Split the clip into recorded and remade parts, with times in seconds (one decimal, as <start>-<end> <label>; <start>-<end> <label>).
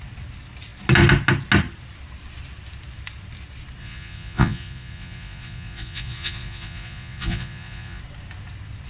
0.0-3.8 recorded; 3.8-8.0 remade; 8.0-8.9 recorded